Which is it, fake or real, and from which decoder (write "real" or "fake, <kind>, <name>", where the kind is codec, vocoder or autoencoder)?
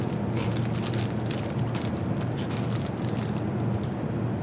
real